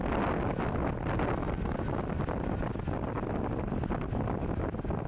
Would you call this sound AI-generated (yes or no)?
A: no